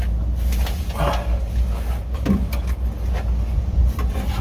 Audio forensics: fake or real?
real